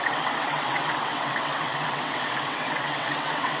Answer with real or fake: fake